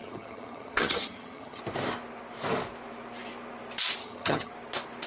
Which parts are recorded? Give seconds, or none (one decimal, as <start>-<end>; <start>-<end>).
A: 1.6-4.0; 4.5-5.1